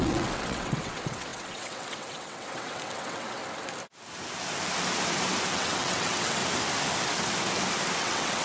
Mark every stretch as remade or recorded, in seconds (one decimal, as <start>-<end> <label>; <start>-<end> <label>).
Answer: 0.0-3.4 remade; 3.4-5.5 recorded; 5.5-6.4 remade; 6.4-8.0 recorded; 8.0-8.4 remade